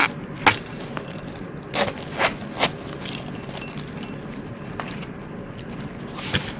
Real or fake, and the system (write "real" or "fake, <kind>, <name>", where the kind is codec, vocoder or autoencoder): real